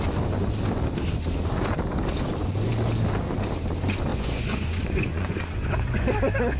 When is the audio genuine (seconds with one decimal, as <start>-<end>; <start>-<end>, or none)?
0.0-4.1; 6.1-6.6